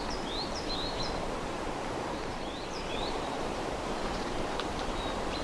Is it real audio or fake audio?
fake